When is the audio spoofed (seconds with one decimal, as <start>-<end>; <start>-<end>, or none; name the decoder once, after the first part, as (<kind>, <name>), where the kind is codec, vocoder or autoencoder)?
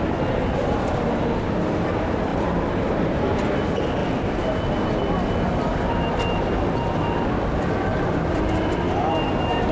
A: 2.3-3.1 (vocoder, BigVGAN v2); 4.0-5.0; 5.5-7.3; 7.9-8.5